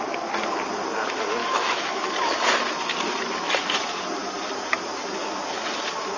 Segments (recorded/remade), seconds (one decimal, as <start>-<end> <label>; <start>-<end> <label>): 0.0-1.4 recorded; 1.4-2.1 remade; 2.1-6.2 recorded